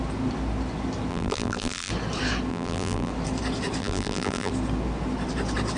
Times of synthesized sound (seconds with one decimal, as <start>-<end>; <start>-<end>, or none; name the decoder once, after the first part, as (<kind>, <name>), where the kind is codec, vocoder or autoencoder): 1.1-1.9 (vocoder, BigVGAN v2); 2.5-3.1; 3.8-4.5